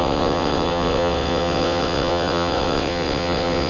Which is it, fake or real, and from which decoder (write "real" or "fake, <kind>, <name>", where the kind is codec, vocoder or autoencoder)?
fake, vocoder, WaveNeXt